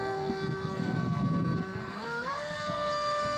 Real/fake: fake